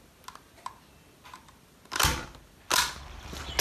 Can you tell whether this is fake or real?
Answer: real